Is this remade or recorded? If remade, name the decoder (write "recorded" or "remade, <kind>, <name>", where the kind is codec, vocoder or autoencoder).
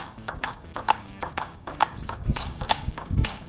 remade, codec, DAC